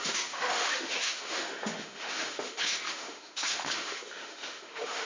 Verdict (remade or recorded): remade